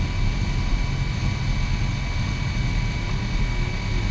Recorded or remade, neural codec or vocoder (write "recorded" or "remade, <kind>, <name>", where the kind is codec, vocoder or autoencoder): recorded